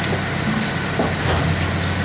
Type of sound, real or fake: real